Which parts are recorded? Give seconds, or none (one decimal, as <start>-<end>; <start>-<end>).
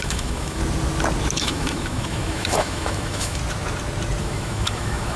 0.6-1.3; 3.4-4.2